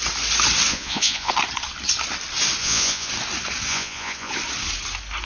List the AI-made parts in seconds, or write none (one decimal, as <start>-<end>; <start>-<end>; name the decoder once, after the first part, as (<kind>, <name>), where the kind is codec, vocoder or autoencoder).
0.7-1.3 (vocoder, Vocos); 2.6-3.1; 3.7-4.3